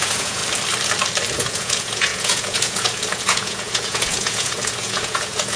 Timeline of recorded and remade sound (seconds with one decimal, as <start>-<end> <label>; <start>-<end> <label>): 0.0-0.4 remade; 0.4-1.3 recorded; 1.3-5.6 remade